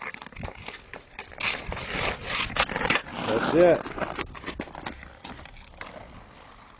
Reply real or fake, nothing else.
real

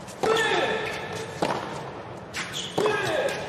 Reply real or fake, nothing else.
real